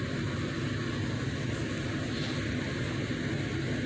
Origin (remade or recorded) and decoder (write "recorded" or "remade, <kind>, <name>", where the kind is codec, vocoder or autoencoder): recorded